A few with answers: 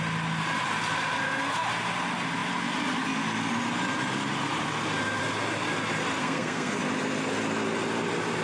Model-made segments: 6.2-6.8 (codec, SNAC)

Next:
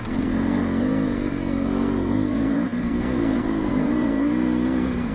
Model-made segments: 0.0-5.1 (codec, SNAC)

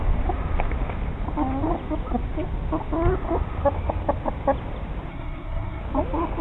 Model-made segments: 5.1-5.8 (codec, SNAC)

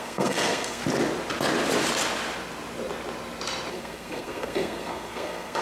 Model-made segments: 0.0-0.8 (codec, SNAC); 3.7-5.6